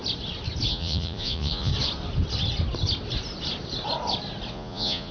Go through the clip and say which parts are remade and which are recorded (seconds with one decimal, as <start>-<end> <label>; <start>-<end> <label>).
0.0-0.7 recorded; 0.7-1.7 remade; 1.7-4.5 recorded; 4.5-5.1 remade